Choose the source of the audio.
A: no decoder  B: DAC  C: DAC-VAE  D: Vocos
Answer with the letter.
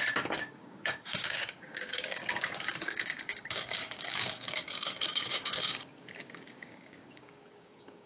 B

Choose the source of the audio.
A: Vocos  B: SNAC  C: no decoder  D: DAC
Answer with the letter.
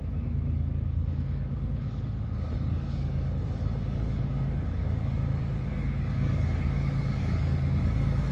D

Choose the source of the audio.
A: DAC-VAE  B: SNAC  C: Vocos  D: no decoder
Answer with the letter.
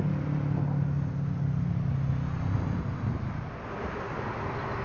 D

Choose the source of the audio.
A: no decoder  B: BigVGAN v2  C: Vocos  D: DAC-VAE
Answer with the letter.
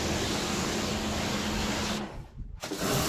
A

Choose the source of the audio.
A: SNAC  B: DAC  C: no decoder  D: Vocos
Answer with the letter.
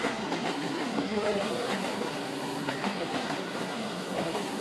A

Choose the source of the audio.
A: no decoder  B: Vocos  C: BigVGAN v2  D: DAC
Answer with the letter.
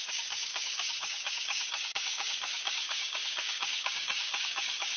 D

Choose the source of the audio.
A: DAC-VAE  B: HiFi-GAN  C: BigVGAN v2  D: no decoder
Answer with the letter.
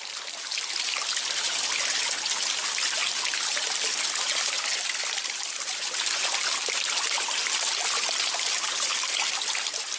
D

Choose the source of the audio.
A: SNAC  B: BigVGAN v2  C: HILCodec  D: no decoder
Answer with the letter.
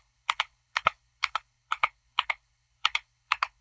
C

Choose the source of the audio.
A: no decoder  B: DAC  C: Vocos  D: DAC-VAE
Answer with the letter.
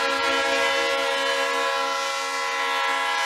A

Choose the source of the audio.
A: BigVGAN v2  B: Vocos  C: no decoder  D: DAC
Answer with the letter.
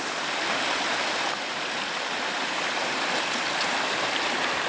A